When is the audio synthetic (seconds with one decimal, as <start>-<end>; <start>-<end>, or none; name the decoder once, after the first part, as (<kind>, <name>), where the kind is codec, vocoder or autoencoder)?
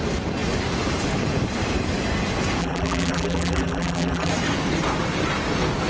2.6-4.3 (vocoder, BigVGAN v2)